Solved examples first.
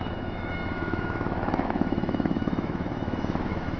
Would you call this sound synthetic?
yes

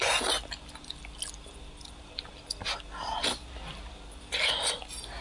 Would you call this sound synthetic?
no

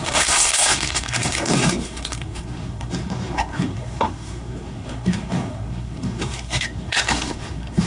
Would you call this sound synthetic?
yes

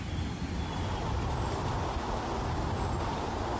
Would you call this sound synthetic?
no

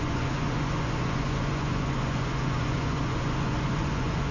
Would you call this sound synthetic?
yes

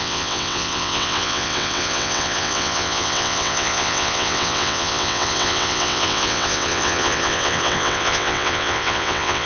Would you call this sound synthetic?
yes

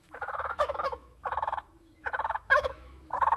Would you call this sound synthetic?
yes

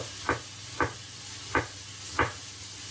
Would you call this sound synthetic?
no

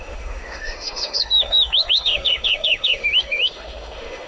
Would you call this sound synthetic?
yes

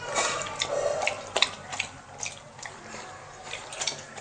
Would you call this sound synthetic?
no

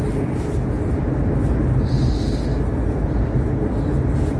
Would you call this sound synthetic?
no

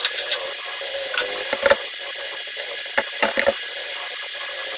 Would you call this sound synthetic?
no